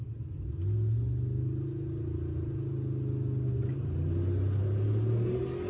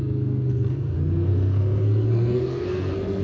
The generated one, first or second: second